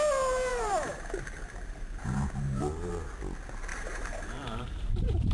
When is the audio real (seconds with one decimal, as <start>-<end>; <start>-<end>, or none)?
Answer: 0.0-0.5; 2.9-3.7